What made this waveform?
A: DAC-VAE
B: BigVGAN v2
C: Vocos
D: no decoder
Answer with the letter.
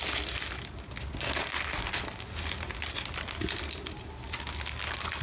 D